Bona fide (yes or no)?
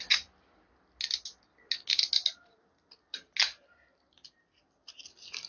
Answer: yes